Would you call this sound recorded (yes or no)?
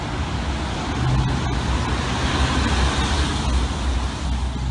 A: yes